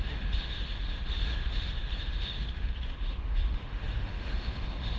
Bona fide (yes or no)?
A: no